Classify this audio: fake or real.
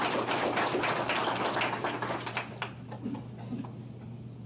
real